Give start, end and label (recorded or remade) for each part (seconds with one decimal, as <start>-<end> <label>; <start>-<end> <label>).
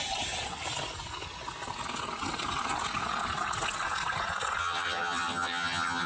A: 0.0-4.6 recorded; 4.6-6.1 remade